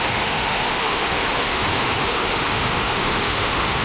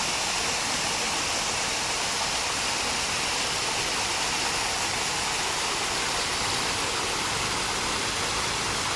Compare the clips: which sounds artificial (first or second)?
first